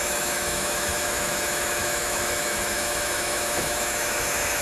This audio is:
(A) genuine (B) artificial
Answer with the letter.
B